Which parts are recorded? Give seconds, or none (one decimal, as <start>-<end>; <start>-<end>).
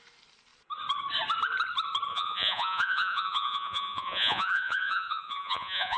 0.0-2.1